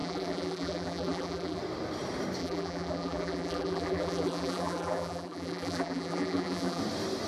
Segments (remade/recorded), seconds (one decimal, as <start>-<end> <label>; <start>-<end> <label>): 0.0-1.6 remade; 1.6-2.4 recorded; 2.4-6.8 remade; 6.8-7.3 recorded